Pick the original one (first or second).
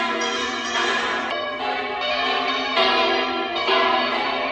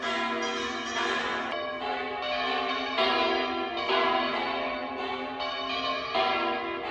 second